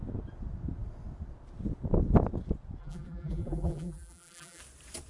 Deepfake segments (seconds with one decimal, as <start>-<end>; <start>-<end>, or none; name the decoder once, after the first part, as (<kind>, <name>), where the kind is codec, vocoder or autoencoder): 2.8-4.6 (vocoder, BigVGAN v2)